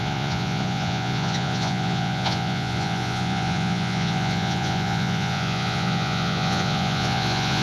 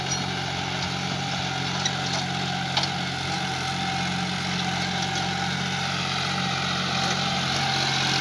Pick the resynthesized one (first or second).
first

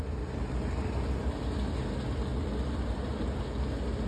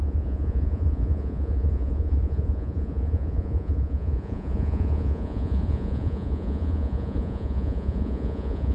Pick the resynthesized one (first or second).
second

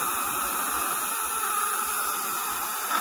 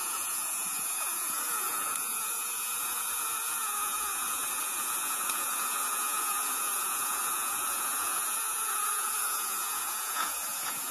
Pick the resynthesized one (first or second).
second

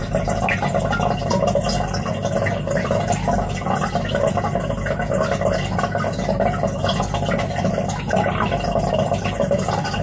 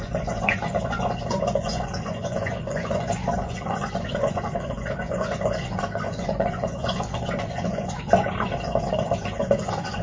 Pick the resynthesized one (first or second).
second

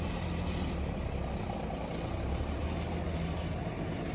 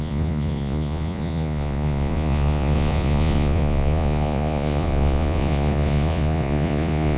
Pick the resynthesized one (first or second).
second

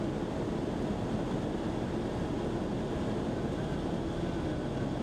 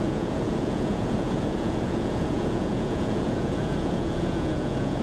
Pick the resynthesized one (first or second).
second